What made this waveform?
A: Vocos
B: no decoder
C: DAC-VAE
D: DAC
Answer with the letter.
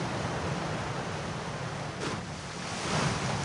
B